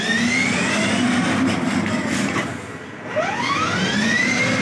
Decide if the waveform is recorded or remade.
recorded